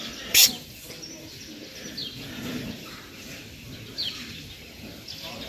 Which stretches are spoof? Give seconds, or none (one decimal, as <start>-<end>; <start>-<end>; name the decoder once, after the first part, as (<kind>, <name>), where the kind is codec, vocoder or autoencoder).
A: none